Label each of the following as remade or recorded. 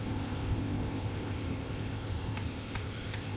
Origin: remade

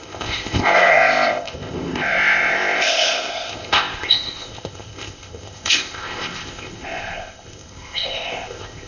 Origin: remade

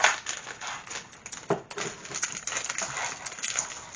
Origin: recorded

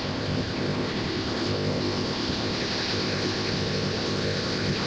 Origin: remade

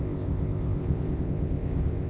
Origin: remade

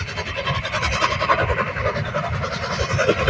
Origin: recorded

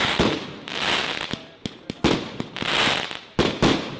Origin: recorded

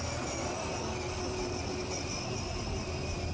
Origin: recorded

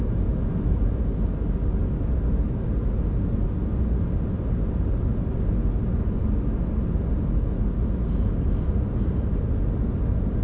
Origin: recorded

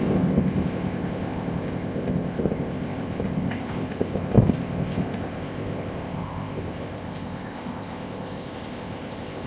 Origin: remade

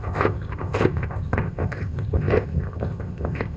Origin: remade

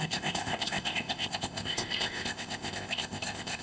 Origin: remade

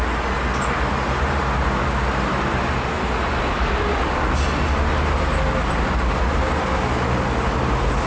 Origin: recorded